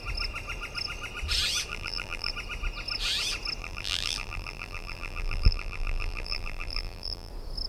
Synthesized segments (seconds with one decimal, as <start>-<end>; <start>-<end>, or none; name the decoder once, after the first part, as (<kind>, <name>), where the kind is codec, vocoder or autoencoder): 1.7-2.3 (vocoder, BigVGAN v2); 3.6-7.3